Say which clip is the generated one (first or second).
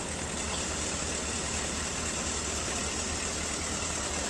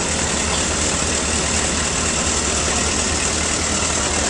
first